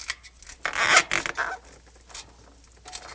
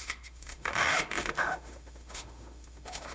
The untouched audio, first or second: first